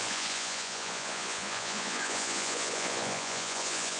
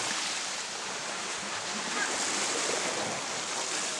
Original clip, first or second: second